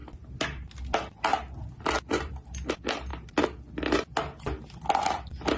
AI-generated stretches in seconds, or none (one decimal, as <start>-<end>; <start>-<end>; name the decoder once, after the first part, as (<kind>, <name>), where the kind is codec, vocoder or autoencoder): none